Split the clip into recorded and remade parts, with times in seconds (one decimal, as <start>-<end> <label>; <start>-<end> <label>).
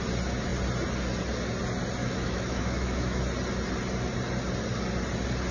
0.0-2.0 recorded; 2.0-3.2 remade; 3.2-5.5 recorded